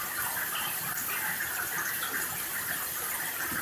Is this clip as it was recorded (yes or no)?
yes